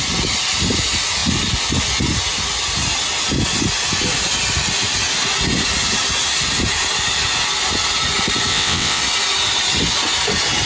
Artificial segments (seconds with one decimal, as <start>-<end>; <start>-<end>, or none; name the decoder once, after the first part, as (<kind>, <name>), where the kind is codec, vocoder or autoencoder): 8.5-9.0 (vocoder, WaveNeXt)

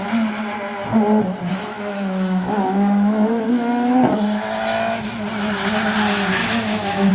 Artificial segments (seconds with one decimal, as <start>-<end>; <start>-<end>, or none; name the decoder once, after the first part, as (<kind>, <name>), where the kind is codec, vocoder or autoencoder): 1.5-4.0 (autoencoder, DAC-VAE); 6.4-7.1

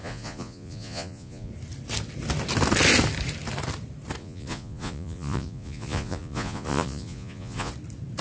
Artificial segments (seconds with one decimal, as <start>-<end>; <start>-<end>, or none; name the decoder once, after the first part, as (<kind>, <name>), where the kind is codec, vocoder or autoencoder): 0.0-1.5 (vocoder, Vocos); 4.2-7.7

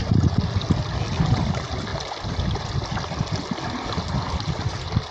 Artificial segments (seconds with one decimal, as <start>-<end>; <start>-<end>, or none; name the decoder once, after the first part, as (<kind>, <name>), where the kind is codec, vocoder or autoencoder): none

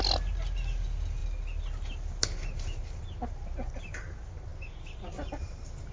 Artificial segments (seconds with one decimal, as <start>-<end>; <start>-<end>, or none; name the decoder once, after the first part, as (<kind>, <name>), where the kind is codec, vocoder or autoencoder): none

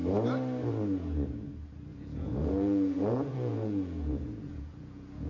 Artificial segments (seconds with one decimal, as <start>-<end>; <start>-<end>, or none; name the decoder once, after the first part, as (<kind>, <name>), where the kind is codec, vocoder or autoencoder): 1.9-5.3 (vocoder, Vocos)

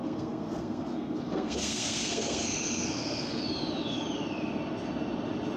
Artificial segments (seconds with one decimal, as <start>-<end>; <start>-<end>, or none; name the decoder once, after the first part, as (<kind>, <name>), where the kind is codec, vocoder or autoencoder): 0.0-3.4 (codec, SNAC)